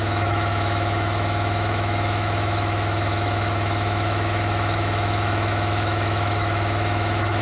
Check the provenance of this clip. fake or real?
fake